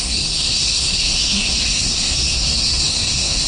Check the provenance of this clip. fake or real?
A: fake